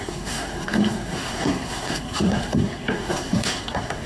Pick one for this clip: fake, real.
fake